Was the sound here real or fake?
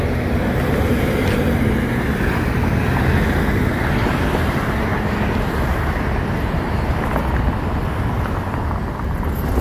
real